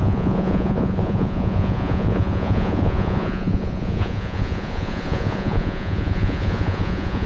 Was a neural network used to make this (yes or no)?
yes